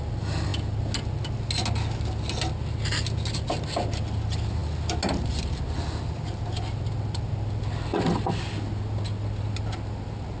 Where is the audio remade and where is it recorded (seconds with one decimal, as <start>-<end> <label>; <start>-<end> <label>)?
0.0-10.4 recorded